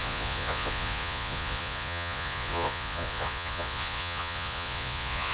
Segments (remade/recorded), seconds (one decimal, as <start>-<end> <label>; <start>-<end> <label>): 0.0-5.3 remade